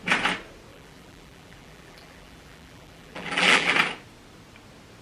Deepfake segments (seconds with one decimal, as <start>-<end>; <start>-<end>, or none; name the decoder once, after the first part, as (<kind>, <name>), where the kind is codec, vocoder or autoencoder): 0.7-3.7 (vocoder, BigVGAN v2)